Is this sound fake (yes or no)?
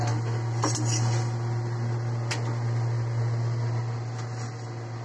no